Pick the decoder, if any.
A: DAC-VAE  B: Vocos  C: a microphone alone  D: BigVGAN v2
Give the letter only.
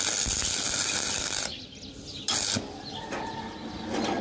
C